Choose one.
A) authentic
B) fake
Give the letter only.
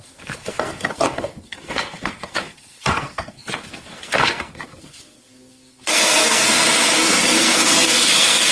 B